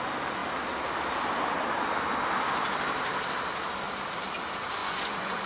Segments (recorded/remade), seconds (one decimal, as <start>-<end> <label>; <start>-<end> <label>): 0.0-4.8 recorded; 4.8-5.5 remade